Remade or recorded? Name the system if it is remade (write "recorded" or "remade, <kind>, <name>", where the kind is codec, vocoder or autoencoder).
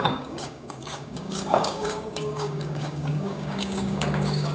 remade, codec, DAC